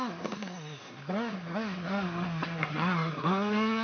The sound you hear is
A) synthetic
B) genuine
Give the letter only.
A